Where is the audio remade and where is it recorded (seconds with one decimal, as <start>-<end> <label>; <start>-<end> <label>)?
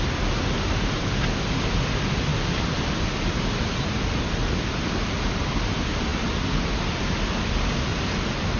0.0-8.6 recorded